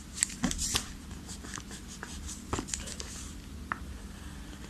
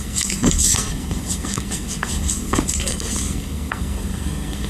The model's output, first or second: second